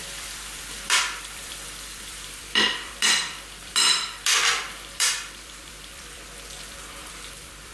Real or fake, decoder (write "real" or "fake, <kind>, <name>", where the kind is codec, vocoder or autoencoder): fake, vocoder, BigVGAN v2